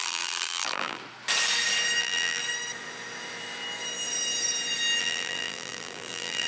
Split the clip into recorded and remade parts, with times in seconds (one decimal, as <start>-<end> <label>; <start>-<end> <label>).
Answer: 0.0-1.0 remade; 1.0-2.0 recorded; 2.0-2.4 remade; 2.4-5.0 recorded; 5.0-6.5 remade